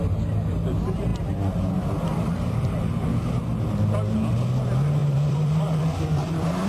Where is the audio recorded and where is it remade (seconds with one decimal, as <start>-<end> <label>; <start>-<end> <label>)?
0.0-2.1 recorded; 2.1-2.9 remade; 2.9-5.0 recorded; 5.0-6.7 remade